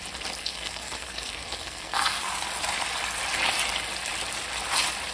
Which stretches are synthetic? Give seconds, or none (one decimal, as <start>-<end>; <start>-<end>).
0.4-2.3